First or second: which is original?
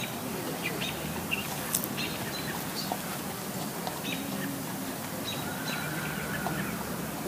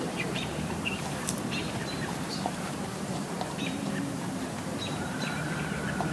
first